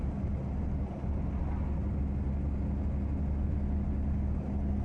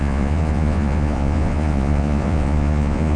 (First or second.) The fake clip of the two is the second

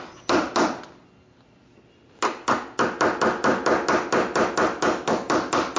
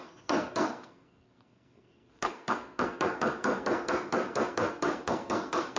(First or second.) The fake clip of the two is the second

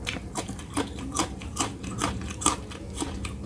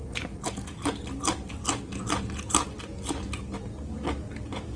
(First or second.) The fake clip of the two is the first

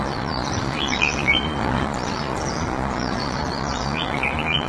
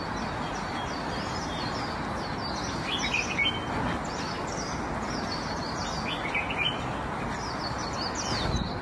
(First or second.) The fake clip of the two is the first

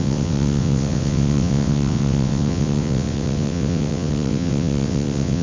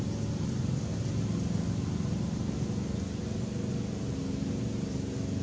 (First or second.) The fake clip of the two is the first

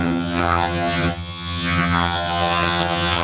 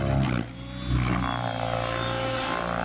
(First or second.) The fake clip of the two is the first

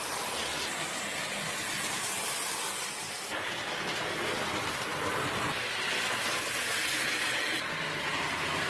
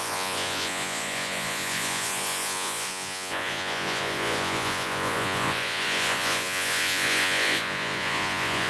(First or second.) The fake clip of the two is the second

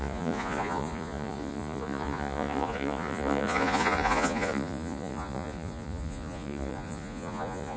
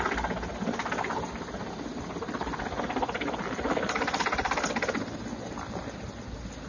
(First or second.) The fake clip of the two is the first